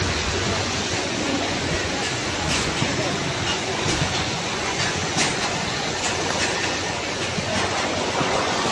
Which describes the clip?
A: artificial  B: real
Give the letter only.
A